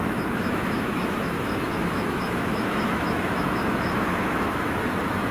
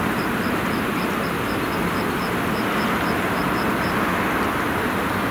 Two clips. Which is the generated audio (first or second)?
first